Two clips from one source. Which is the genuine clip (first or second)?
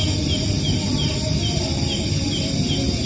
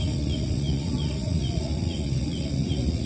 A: first